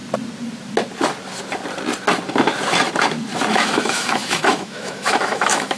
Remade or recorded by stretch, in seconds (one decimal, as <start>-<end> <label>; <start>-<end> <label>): 0.0-3.5 recorded; 3.5-5.8 remade